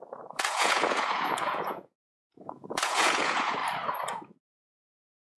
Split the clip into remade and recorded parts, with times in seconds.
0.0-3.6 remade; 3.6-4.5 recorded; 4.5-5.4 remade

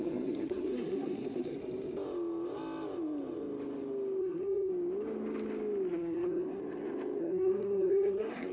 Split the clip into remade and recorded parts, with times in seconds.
0.0-1.6 remade; 1.6-4.2 recorded; 4.2-4.7 remade; 4.7-5.9 recorded; 5.9-6.6 remade; 6.6-7.2 recorded; 7.2-8.5 remade

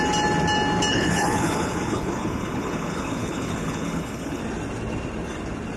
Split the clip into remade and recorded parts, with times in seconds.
0.0-0.9 recorded; 0.9-4.4 remade; 4.4-5.8 recorded

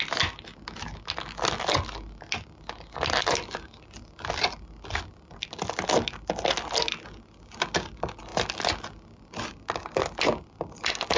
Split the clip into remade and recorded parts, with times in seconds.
0.0-11.2 recorded